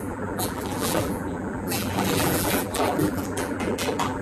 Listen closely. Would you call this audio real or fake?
fake